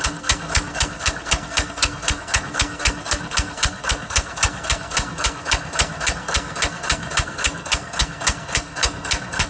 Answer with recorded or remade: remade